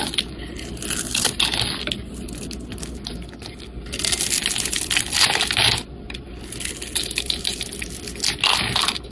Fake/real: real